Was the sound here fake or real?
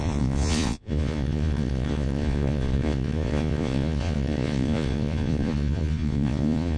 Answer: fake